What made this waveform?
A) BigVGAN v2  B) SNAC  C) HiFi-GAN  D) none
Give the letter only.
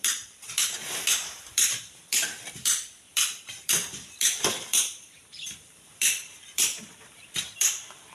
A